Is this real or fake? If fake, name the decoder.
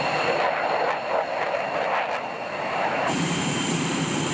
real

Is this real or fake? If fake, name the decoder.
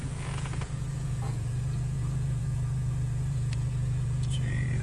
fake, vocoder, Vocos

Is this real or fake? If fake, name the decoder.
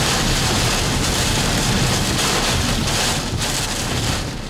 real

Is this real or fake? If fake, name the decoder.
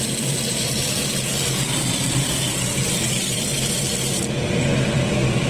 fake, vocoder, BigVGAN v2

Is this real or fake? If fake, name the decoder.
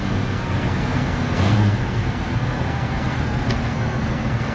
fake, codec, SNAC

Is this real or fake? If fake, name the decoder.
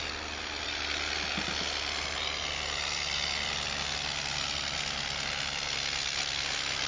real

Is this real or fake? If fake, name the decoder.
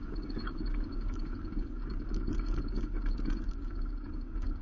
fake, codec, DAC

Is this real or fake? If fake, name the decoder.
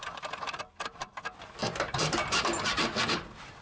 real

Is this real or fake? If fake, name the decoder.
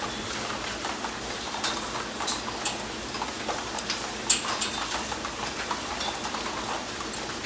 real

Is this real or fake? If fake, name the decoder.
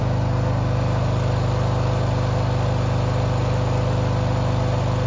real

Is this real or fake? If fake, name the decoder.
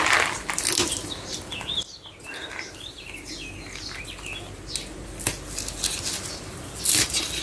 real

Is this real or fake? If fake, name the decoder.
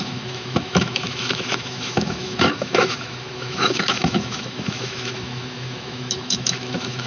fake, autoencoder, DAC-VAE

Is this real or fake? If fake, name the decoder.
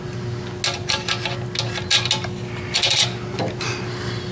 real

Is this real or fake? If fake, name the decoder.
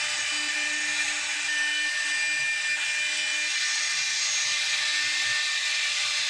real